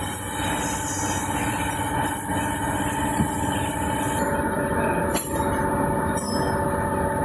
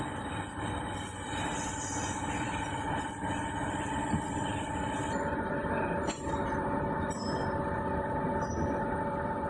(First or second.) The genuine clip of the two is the first